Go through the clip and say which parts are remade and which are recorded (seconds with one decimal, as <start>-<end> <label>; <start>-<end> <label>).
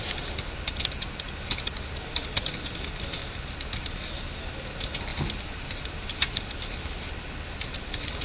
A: 0.0-3.2 recorded; 3.2-4.4 remade; 4.4-5.1 recorded; 5.1-6.5 remade; 6.5-8.2 recorded